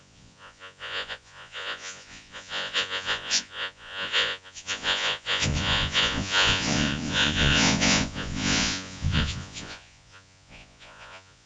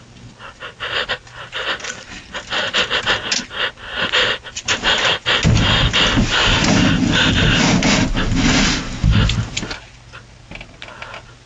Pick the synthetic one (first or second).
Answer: first